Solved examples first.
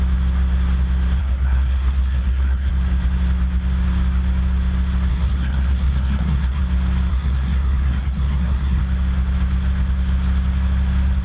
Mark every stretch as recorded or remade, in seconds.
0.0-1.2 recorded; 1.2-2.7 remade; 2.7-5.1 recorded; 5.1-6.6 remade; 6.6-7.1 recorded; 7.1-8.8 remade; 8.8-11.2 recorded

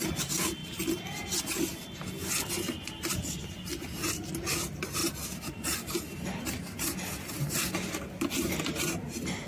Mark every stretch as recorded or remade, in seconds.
0.0-9.5 recorded

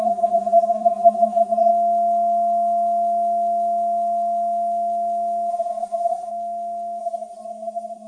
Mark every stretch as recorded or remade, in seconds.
0.0-1.7 remade; 1.7-5.5 recorded; 5.5-6.3 remade; 6.3-7.0 recorded; 7.0-8.1 remade

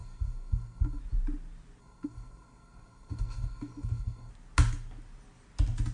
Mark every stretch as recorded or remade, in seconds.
0.0-1.0 remade; 1.0-1.8 recorded; 1.8-4.3 remade; 4.3-5.9 recorded

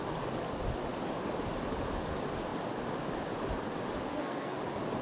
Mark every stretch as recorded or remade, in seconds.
0.0-4.1 recorded; 4.1-4.6 remade; 4.6-5.0 recorded

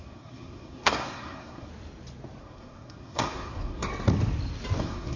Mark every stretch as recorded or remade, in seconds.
0.0-1.7 remade; 1.7-2.4 recorded; 2.4-3.9 remade; 3.9-4.8 recorded; 4.8-5.2 remade

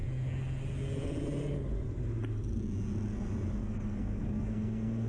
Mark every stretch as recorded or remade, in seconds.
0.0-3.6 recorded; 3.6-5.1 remade

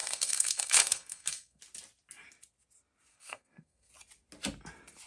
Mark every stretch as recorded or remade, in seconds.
0.0-1.6 remade; 1.6-3.1 recorded; 3.1-3.9 remade; 3.9-5.1 recorded